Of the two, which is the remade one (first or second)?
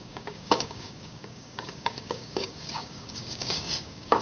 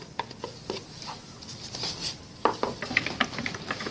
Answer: first